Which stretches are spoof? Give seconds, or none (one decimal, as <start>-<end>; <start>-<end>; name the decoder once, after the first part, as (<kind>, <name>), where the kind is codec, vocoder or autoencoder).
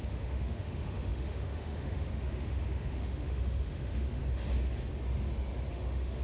0.0-4.2 (autoencoder, DAC-VAE); 5.7-6.2